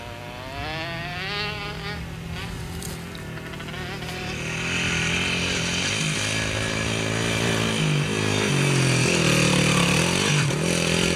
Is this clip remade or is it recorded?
recorded